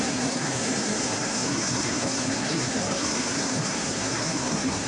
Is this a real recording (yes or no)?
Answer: no